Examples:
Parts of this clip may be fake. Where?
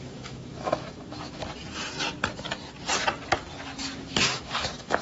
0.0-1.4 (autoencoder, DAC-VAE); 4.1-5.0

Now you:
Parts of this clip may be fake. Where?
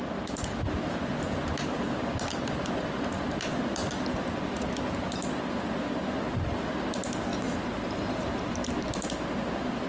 none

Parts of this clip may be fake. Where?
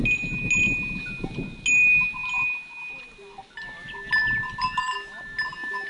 none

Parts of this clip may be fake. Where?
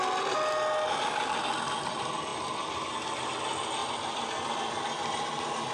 none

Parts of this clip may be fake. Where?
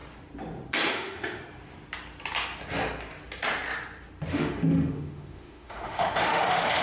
0.9-1.4 (autoencoder, DAC-VAE); 4.3-6.8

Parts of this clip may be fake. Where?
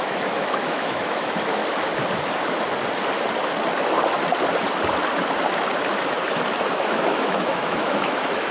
0.0-1.6 (autoencoder, DAC-VAE); 6.7-8.5